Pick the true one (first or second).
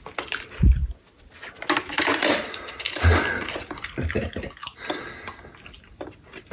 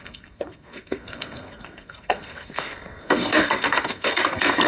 first